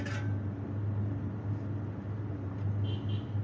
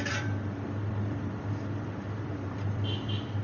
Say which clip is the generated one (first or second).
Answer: second